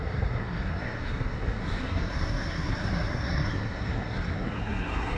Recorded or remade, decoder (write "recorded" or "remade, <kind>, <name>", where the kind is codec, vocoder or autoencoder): remade, codec, SNAC